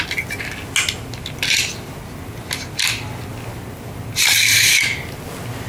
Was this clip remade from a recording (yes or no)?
no